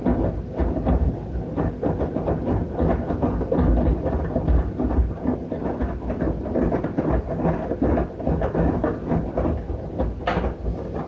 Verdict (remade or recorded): recorded